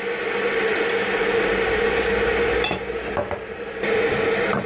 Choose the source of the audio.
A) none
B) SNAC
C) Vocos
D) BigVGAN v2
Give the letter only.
A